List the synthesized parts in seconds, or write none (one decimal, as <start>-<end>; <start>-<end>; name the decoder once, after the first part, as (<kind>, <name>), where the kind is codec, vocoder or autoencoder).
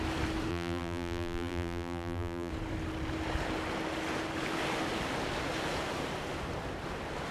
0.5-2.5 (vocoder, BigVGAN v2)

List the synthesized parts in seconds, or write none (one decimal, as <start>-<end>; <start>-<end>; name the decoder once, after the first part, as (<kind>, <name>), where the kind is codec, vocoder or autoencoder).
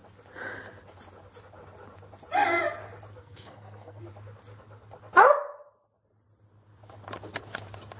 3.2-4.0 (codec, SNAC)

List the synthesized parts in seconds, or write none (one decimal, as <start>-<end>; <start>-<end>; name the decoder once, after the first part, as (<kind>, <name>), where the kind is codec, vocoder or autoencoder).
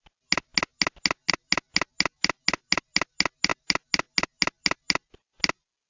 none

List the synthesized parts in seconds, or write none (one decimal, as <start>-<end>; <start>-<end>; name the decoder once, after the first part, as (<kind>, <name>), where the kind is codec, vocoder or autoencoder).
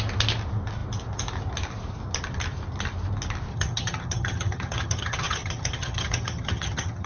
3.5-7.1 (vocoder, HiFi-GAN)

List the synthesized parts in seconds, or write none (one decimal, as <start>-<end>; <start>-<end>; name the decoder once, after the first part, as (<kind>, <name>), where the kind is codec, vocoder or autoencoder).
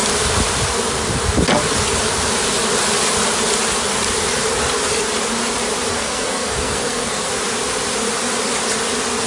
5.9-7.3 (codec, SNAC)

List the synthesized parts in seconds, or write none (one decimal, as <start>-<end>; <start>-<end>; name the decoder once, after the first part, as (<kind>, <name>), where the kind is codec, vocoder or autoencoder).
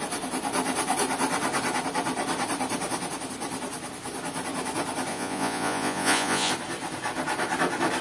5.1-6.5 (vocoder, Vocos)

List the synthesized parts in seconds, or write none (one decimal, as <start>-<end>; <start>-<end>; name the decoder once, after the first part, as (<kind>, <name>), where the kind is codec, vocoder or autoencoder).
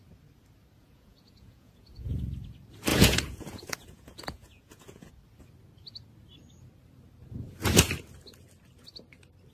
0.8-2.2 (vocoder, Vocos); 2.9-5.1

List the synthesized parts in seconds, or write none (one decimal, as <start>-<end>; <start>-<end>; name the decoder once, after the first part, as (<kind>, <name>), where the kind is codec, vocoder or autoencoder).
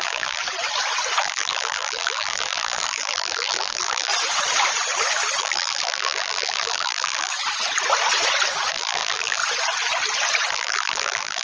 0.0-0.4 (vocoder, BigVGAN v2); 1.2-4.1; 5.4-7.3; 8.7-9.4; 10.5-11.4